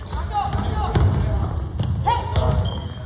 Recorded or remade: recorded